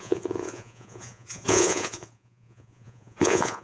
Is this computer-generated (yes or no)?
yes